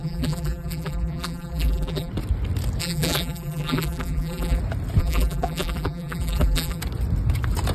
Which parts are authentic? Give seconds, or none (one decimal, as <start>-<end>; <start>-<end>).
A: 2.1-2.8; 4.6-5.0; 6.8-7.7